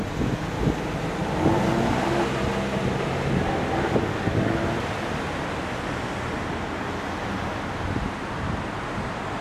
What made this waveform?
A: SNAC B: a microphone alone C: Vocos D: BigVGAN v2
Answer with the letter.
B